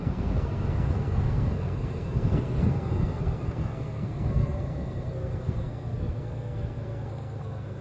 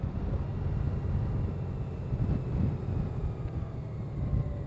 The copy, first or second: first